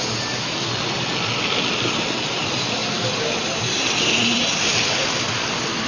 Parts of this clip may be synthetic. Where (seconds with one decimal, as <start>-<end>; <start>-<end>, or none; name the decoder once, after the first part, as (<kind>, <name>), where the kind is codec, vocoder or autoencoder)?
none